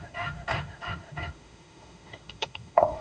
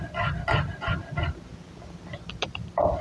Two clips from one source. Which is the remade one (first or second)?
first